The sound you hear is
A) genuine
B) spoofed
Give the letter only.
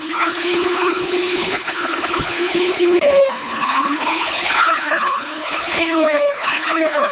B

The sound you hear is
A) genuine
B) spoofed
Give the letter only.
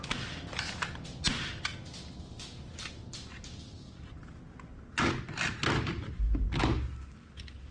A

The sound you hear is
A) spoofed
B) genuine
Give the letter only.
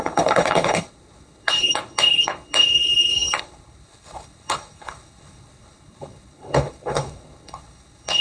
A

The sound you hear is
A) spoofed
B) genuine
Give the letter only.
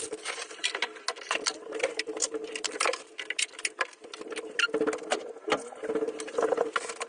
B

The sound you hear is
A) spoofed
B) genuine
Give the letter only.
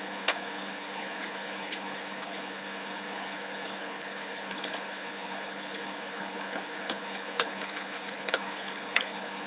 A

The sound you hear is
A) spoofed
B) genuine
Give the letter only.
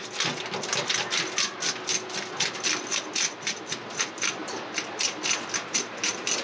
B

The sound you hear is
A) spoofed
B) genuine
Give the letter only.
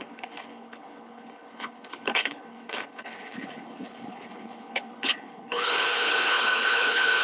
A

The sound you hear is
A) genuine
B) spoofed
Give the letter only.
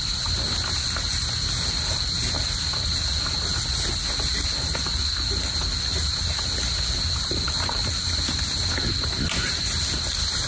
A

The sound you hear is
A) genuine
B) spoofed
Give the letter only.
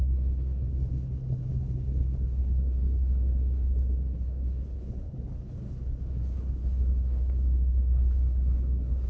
B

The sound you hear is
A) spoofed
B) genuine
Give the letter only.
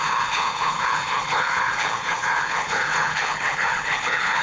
A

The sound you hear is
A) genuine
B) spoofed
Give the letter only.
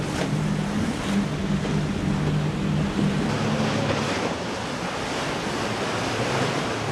A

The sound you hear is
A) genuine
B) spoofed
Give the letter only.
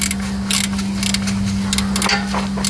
A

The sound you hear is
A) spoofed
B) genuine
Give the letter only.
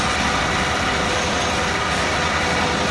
B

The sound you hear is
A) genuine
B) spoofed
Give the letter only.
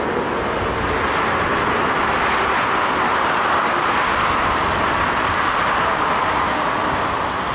A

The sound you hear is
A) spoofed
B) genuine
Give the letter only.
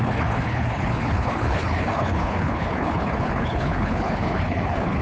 A